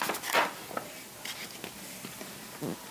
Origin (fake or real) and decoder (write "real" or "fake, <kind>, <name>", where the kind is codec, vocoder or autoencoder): real